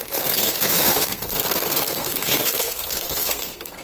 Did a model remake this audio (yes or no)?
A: yes